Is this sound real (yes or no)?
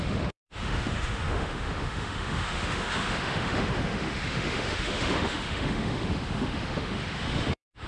no